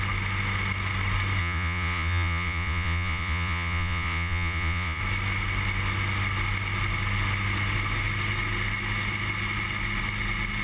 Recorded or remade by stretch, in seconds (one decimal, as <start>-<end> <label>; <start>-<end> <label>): 0.0-1.4 recorded; 1.4-5.0 remade; 5.0-10.6 recorded